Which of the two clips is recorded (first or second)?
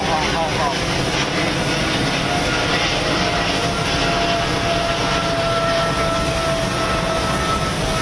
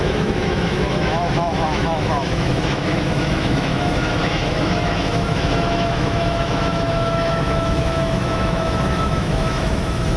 first